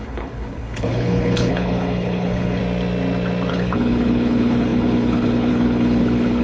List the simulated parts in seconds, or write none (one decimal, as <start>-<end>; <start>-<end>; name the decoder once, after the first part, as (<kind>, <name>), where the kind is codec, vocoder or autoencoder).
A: 0.0-2.6 (codec, HILCodec); 3.5-6.4